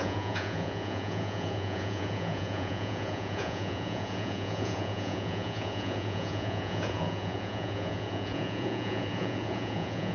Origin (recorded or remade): remade